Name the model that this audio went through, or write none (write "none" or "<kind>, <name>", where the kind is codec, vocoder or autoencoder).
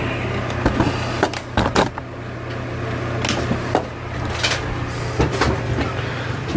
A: none